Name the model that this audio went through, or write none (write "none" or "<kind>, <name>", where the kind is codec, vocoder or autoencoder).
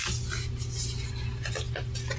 none